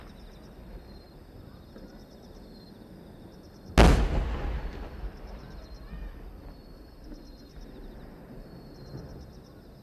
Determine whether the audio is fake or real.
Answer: real